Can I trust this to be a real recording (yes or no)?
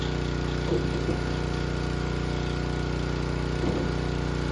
yes